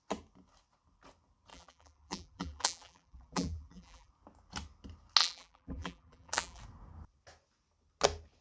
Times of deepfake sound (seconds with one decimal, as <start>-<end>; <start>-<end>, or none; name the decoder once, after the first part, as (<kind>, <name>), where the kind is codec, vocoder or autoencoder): 1.5-4.1 (vocoder, BigVGAN v2); 5.2-6.6